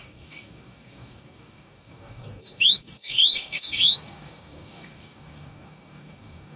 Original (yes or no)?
no